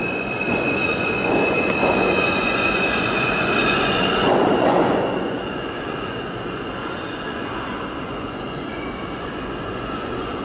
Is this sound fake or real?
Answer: fake